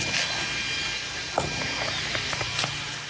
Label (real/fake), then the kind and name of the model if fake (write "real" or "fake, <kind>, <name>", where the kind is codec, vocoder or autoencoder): real